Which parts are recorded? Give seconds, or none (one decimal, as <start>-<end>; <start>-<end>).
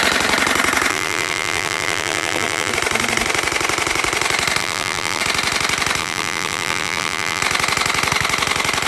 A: 0.0-0.9; 2.7-4.6; 5.2-6.0; 7.4-8.9